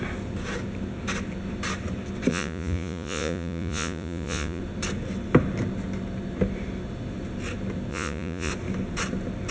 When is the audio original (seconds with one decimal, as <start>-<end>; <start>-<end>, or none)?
0.0-2.3; 4.6-7.9; 8.5-9.5